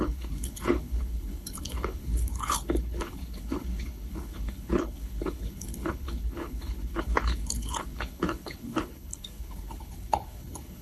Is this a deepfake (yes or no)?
yes